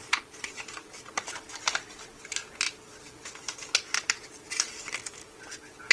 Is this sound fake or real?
fake